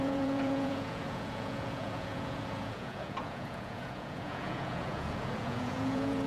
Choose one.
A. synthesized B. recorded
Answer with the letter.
A